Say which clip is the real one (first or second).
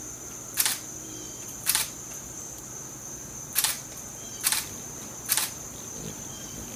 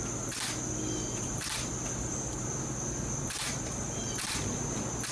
second